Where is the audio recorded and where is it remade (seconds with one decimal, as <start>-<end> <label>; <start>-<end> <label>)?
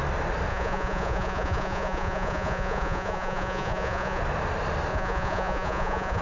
0.0-0.5 recorded; 0.5-4.2 remade; 4.2-4.9 recorded; 4.9-6.2 remade